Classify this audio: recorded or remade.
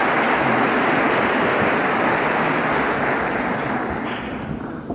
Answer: recorded